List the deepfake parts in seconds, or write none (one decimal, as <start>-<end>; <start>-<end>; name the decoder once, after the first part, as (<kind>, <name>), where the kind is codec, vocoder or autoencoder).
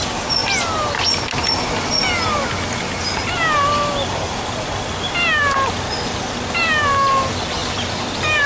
none